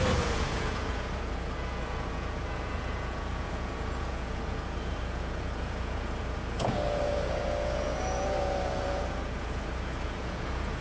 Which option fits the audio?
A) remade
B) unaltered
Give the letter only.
A